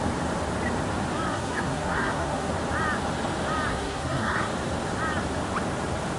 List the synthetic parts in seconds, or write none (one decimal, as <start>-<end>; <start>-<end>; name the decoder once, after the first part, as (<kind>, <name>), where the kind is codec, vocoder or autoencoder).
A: 1.3-2.5 (codec, SNAC); 3.7-4.5